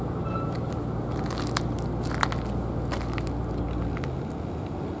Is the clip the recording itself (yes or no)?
yes